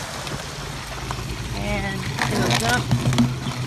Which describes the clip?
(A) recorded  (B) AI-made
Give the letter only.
A